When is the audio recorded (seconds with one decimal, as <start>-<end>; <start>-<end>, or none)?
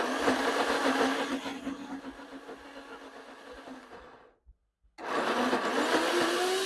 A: 0.0-6.7